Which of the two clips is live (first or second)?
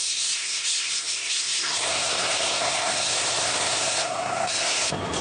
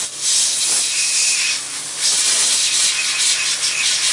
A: second